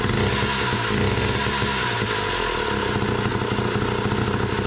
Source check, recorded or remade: recorded